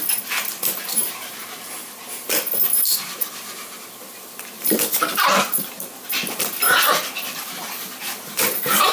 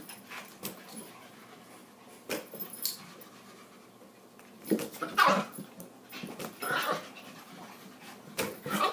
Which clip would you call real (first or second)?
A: second